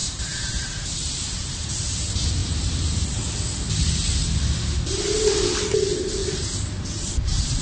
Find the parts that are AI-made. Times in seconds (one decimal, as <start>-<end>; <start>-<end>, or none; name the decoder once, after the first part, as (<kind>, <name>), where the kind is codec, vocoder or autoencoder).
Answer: 0.0-2.0 (vocoder, BigVGAN v2); 6.2-7.6